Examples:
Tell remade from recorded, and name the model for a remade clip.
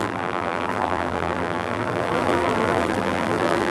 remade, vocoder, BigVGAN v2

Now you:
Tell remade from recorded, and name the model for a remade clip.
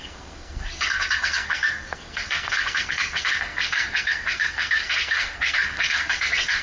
remade, codec, SNAC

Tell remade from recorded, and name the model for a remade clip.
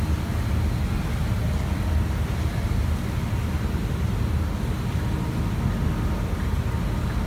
recorded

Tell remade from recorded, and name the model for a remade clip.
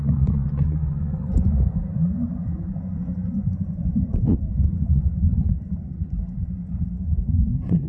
remade, vocoder, Vocos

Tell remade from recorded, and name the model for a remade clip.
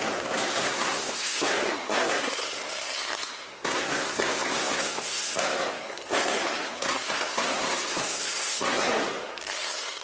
remade, codec, SNAC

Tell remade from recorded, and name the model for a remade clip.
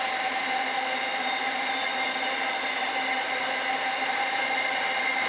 recorded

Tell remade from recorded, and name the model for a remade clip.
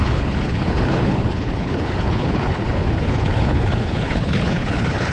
remade, codec, HILCodec